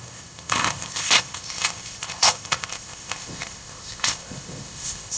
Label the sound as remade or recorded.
remade